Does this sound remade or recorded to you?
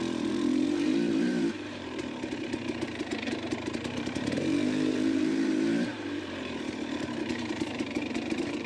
remade